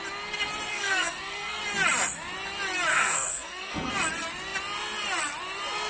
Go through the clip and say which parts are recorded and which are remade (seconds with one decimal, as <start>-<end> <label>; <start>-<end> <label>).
0.0-0.7 recorded; 0.7-1.6 remade; 1.6-2.9 recorded; 2.9-3.9 remade; 3.9-5.9 recorded